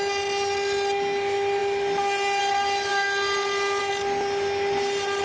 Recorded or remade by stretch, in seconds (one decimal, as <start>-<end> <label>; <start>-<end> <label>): 0.0-5.2 recorded